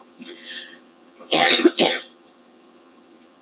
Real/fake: fake